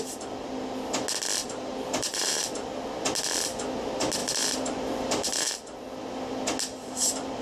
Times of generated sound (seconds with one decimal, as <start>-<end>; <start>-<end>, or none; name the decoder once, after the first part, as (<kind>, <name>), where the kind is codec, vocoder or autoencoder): 1.4-2.4 (vocoder, BigVGAN v2); 4.2-5.5; 6.7-7.4